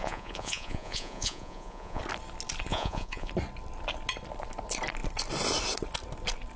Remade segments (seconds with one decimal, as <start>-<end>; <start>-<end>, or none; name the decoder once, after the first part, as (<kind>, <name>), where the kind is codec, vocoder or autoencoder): 0.0-2.0 (vocoder, Vocos); 2.7-3.3